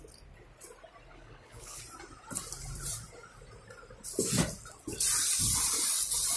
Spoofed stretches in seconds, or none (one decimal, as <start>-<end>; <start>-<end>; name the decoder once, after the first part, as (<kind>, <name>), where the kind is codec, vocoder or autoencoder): 1.1-1.8 (codec, HILCodec)